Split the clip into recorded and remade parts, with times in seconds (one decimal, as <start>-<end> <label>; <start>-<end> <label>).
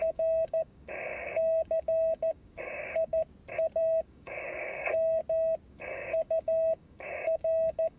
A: 0.0-3.2 remade; 3.2-3.8 recorded; 3.8-5.2 remade; 5.2-5.7 recorded; 5.7-8.0 remade